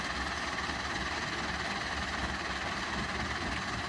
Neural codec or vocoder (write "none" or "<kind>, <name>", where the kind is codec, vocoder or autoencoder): none